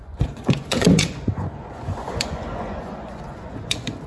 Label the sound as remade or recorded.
remade